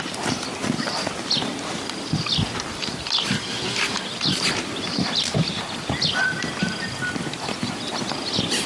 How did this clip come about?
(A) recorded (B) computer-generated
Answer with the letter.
A